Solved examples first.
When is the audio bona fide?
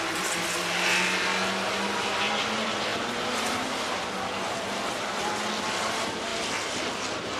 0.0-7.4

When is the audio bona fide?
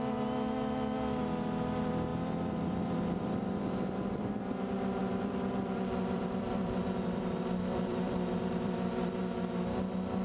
0.0-2.1; 3.6-5.0; 9.2-10.2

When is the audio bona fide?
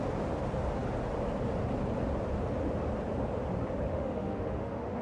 0.0-3.9